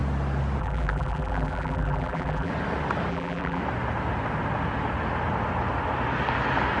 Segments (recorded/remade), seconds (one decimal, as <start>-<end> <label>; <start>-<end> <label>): 0.0-0.6 recorded; 0.6-2.5 remade; 2.5-3.1 recorded; 3.1-3.6 remade; 3.6-6.8 recorded